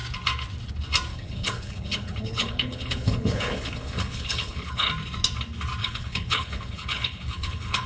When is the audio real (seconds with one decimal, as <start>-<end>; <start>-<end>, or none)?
0.0-1.1; 4.9-5.8